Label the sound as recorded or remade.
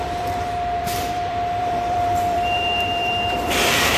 remade